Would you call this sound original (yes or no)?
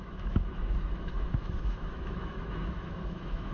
no